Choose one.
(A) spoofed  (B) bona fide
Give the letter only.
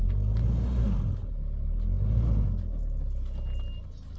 B